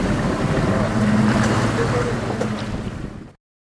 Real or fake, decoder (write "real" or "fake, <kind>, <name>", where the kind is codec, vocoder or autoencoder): real